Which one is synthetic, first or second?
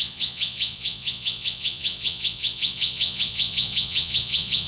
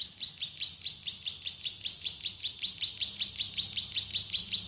first